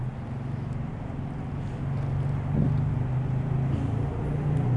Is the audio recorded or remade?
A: recorded